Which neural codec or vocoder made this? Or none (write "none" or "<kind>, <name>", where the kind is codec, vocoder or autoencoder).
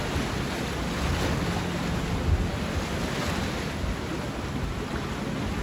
none